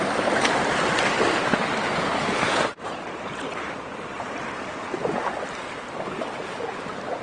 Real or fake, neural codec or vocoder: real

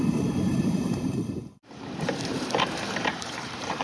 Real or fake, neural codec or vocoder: fake, vocoder, BigVGAN v2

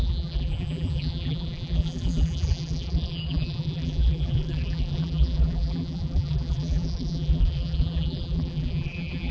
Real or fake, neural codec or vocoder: fake, vocoder, BigVGAN v2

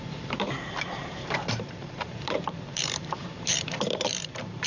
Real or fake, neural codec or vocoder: fake, vocoder, BigVGAN v2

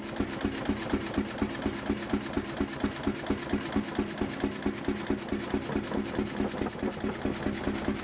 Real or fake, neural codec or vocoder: real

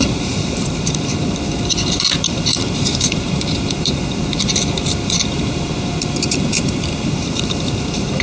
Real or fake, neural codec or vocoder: fake, vocoder, BigVGAN v2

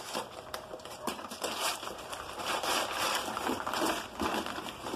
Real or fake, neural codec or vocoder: fake, vocoder, BigVGAN v2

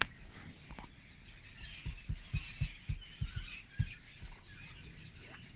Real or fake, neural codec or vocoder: real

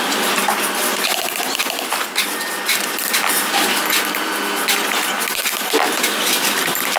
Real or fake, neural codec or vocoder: fake, vocoder, BigVGAN v2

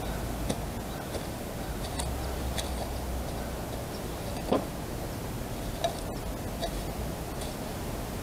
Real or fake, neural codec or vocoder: real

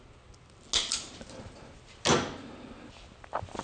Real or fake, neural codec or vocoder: real